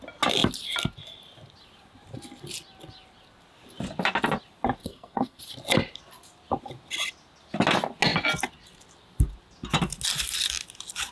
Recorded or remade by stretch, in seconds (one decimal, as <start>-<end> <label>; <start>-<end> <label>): 0.0-4.8 recorded; 4.8-5.4 remade; 5.4-11.1 recorded